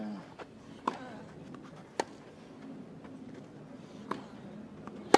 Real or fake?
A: real